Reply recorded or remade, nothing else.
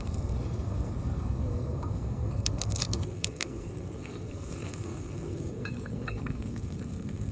remade